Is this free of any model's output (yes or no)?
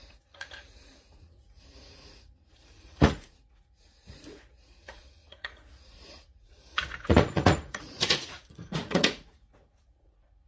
no